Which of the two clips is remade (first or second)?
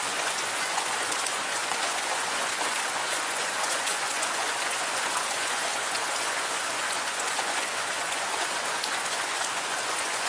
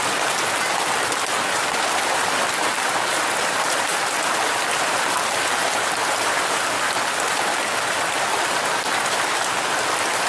first